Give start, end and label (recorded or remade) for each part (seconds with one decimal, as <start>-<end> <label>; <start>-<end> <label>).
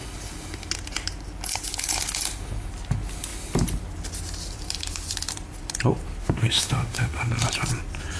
0.0-6.2 recorded; 6.2-7.3 remade; 7.3-8.2 recorded